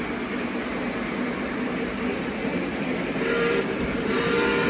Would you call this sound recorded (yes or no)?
yes